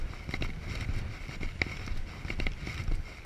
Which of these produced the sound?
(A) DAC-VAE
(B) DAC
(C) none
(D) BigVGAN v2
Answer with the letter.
C